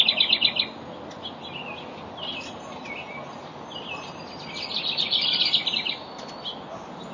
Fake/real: real